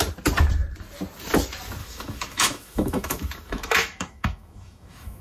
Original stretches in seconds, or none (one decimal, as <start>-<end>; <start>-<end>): 0.0-1.8